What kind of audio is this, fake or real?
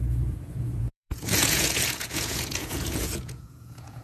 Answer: fake